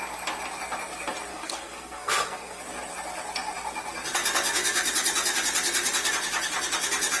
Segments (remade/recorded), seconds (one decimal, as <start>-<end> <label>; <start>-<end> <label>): 0.0-1.3 recorded; 1.3-2.6 remade; 2.6-7.2 recorded